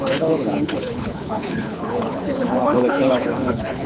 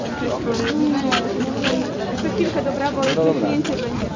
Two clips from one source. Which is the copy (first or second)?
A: first